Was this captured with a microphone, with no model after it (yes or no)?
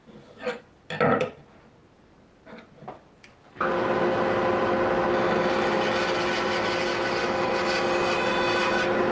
yes